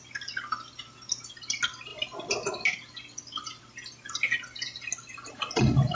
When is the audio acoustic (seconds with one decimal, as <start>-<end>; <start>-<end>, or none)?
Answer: 0.0-5.9